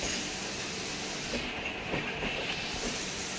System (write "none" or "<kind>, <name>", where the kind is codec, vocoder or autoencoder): none